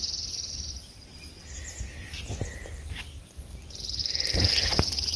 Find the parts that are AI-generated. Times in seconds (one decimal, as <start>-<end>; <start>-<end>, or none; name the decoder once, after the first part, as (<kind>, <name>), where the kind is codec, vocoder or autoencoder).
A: 4.0-4.5 (vocoder, BigVGAN v2)